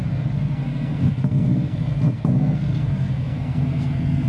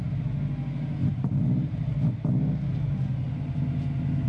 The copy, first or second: first